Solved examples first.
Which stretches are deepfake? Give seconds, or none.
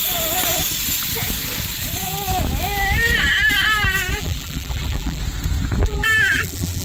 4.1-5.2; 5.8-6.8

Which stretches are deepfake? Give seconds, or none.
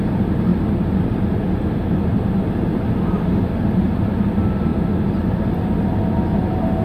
none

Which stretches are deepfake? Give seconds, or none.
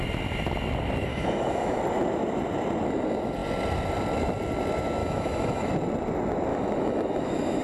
1.1-1.8; 5.0-5.7; 6.5-7.6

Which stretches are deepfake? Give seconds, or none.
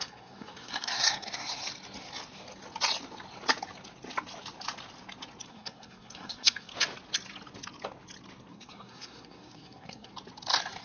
0.0-1.6; 5.5-6.7; 8.5-10.1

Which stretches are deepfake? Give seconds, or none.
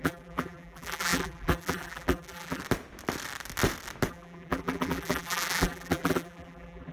0.0-2.6; 4.1-6.9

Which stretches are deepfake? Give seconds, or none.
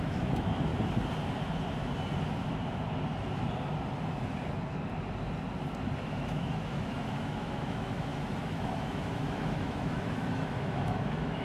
0.0-0.7; 6.0-11.4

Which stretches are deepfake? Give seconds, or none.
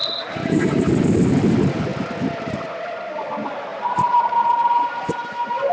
0.0-0.9; 3.7-4.9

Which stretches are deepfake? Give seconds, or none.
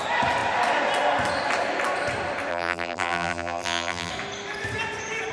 2.5-4.1